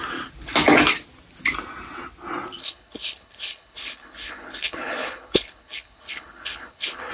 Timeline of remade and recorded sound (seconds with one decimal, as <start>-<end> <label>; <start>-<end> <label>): 0.0-2.6 recorded; 2.6-7.1 remade